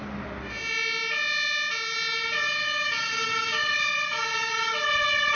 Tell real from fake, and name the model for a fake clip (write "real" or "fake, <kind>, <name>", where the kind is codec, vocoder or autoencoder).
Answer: real